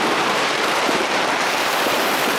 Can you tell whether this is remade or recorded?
remade